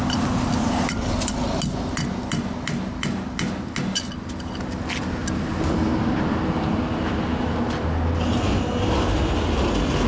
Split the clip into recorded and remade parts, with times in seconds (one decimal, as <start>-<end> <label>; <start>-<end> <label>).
0.0-10.1 recorded